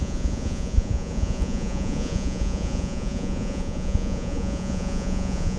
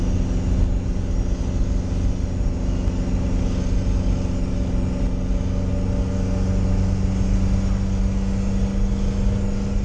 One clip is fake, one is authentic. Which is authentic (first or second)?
second